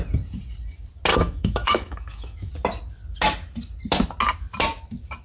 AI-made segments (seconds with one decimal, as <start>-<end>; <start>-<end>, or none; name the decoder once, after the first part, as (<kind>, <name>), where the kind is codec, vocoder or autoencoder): 1.1-2.5 (autoencoder, DAC-VAE)